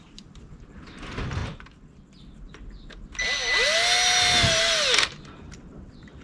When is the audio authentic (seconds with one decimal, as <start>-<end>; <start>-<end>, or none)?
0.0-1.4; 2.2-6.2